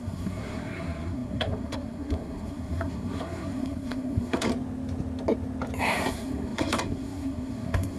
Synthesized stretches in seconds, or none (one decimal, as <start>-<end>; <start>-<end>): 0.0-4.5; 5.8-8.0